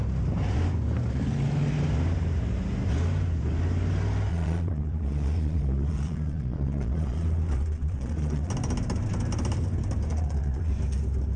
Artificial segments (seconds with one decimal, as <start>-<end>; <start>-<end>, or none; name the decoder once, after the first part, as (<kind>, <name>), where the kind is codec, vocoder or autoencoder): 4.3-8.5 (vocoder, Vocos); 10.1-10.7